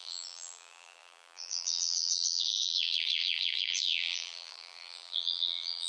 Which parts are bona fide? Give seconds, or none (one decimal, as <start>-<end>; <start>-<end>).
none